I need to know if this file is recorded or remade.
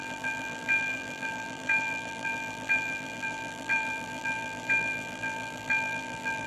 remade